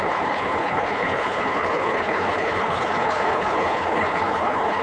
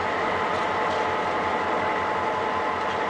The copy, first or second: first